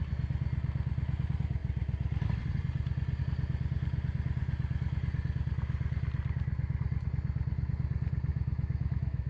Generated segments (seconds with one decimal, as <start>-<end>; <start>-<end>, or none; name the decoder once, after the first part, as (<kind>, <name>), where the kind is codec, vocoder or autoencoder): 8.3-9.3 (autoencoder, DAC-VAE)

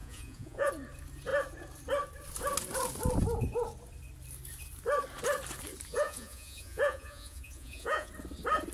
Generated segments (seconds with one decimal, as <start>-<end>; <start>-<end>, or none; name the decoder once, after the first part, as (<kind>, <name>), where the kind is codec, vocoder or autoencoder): 0.0-0.7 (vocoder, Vocos); 5.9-8.1

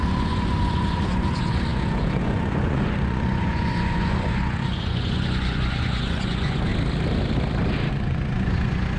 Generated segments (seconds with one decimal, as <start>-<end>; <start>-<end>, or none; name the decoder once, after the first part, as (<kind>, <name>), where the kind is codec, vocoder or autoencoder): 0.0-6.7 (vocoder, Vocos); 7.9-9.0

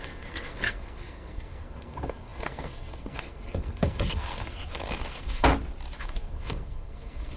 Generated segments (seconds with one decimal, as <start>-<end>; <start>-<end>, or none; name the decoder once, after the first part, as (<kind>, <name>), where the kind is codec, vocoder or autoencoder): 0.0-5.5 (codec, SNAC); 6.0-7.4

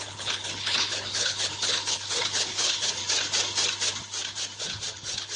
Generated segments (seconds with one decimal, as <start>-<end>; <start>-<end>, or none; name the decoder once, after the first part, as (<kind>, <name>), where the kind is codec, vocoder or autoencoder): 0.0-3.0 (codec, HILCodec); 4.6-5.4

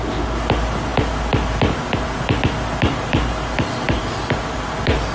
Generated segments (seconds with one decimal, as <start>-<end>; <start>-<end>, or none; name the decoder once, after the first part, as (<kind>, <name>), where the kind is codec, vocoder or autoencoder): none

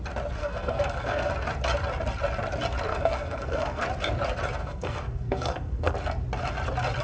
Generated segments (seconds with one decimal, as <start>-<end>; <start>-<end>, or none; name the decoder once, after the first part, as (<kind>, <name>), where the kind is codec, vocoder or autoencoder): 0.4-1.3 (codec, SNAC); 2.9-3.8; 4.6-5.9

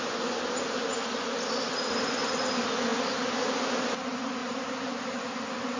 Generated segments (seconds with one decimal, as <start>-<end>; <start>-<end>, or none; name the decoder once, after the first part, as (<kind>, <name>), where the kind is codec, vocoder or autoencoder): 4.4-5.8 (vocoder, BigVGAN v2)